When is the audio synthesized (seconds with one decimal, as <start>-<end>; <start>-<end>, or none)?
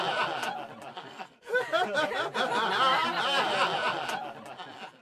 0.9-1.5